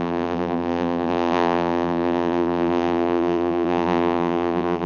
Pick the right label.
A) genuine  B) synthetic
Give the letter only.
B